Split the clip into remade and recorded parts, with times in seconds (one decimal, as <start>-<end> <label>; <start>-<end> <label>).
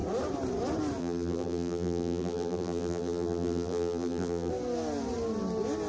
0.0-1.0 recorded; 1.0-4.5 remade; 4.5-5.9 recorded